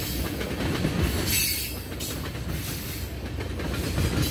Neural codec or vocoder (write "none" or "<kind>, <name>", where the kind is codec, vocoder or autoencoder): none